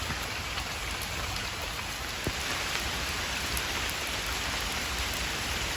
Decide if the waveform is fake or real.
real